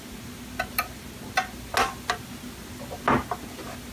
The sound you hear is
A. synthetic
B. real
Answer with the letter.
B